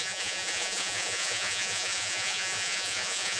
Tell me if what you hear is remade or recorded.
remade